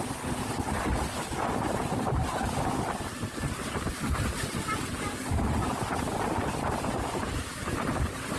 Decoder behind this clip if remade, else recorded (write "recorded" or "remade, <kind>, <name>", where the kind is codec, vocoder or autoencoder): recorded